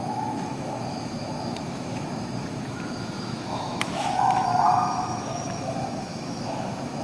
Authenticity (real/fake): fake